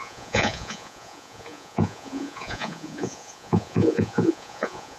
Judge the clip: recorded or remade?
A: remade